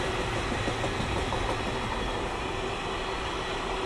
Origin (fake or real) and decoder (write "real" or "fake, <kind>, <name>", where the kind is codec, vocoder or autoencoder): real